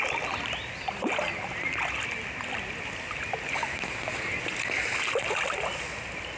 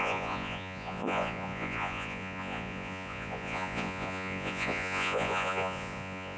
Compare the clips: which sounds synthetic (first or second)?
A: second